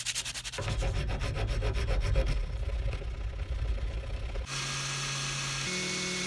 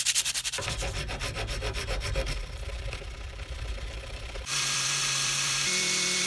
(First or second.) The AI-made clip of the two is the second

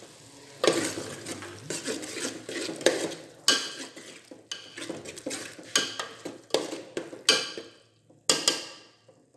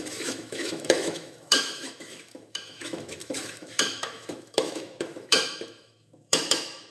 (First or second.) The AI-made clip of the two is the second